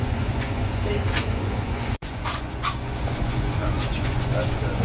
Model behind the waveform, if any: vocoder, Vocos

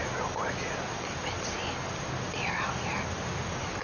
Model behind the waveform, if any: none